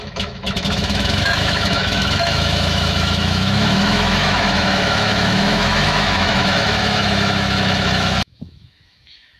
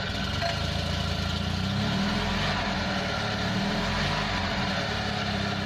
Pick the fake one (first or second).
first